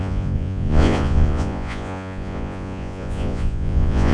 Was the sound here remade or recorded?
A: remade